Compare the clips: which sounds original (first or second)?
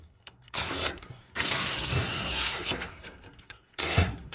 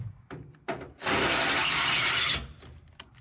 second